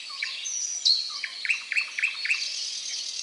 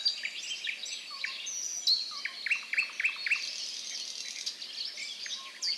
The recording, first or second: second